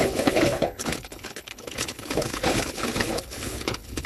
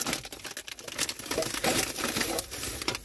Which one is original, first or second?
second